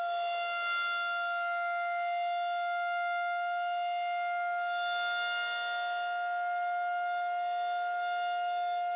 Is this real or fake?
real